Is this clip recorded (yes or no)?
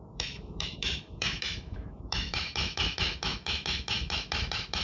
no